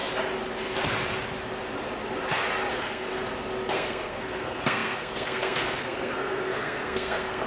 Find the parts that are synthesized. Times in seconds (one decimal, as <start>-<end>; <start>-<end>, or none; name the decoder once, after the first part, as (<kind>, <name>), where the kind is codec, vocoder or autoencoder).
2.7-3.1 (codec, SNAC); 3.7-7.5